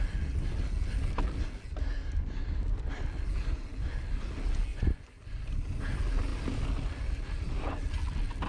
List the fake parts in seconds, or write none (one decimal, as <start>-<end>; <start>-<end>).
4.7-5.4